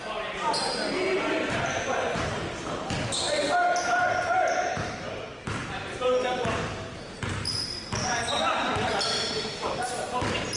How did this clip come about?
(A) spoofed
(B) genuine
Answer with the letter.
A